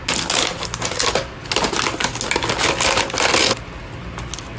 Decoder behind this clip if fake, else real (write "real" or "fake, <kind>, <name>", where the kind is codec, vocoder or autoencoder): real